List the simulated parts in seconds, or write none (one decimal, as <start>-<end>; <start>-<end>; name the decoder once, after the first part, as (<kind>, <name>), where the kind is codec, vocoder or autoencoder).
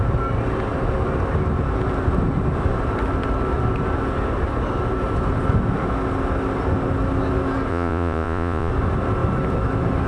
7.7-8.7 (vocoder, Vocos)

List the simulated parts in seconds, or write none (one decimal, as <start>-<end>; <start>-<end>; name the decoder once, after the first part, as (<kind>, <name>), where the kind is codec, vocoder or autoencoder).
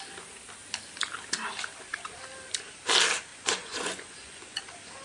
3.3-4.6 (vocoder, Vocos)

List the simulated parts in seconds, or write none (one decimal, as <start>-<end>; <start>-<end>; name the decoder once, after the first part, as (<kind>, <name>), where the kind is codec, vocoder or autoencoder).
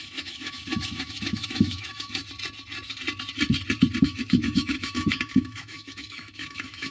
0.0-2.2 (autoencoder, DAC-VAE); 4.0-6.9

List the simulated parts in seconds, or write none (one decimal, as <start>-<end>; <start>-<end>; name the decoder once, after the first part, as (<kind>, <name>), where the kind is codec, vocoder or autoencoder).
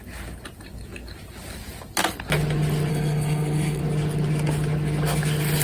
2.9-3.8 (codec, SNAC)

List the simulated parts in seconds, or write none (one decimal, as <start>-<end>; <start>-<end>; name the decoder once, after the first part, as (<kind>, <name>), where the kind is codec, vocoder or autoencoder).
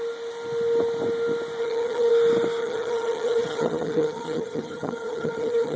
1.6-2.1 (vocoder, HiFi-GAN); 2.6-5.8